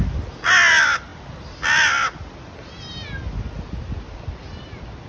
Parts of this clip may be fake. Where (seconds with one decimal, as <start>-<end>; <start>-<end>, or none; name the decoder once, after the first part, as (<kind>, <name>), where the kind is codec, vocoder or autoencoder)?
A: none